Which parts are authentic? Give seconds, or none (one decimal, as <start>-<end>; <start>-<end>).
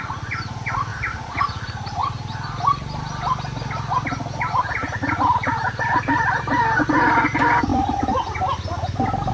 0.0-0.9; 1.4-9.3